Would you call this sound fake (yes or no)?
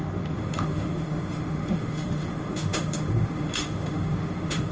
yes